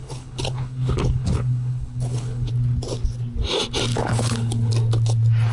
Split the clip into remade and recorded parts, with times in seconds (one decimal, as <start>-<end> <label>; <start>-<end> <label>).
0.0-2.5 remade; 2.5-3.9 recorded; 3.9-4.7 remade; 4.7-5.5 recorded